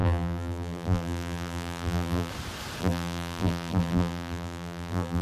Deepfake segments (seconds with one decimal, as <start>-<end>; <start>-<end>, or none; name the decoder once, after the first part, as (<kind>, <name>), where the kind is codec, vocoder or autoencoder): 0.0-2.3 (vocoder, BigVGAN v2); 2.8-5.2